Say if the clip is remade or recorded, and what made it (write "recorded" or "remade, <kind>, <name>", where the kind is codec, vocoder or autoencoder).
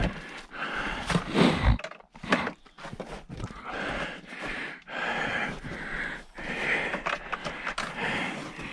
recorded